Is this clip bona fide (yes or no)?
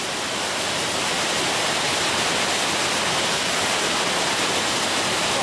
yes